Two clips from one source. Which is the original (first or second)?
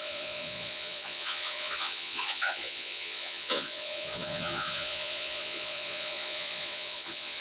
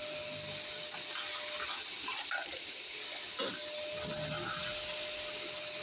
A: second